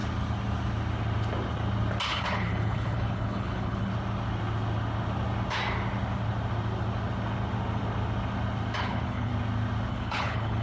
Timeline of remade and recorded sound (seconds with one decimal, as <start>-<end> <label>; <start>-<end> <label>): 0.0-2.1 recorded; 2.1-3.9 remade; 3.9-8.8 recorded; 8.8-9.3 remade; 9.3-9.9 recorded; 9.9-10.6 remade